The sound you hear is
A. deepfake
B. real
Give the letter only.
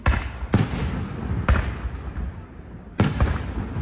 B